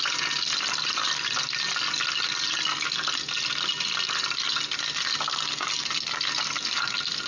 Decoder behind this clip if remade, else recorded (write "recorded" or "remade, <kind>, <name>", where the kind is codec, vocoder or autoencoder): recorded